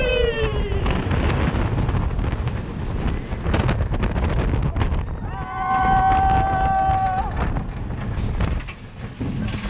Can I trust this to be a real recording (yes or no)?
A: yes